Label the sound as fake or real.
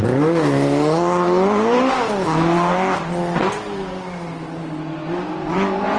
real